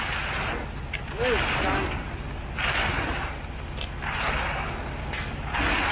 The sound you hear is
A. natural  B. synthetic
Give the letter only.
A